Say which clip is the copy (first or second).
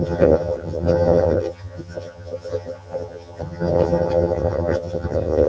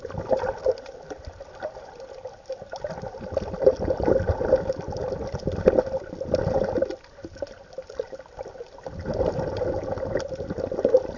first